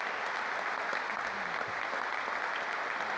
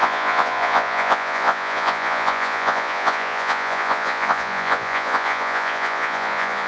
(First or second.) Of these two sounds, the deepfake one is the second